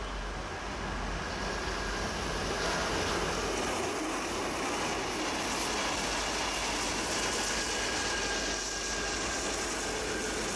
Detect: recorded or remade recorded